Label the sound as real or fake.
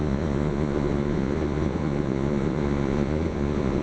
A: fake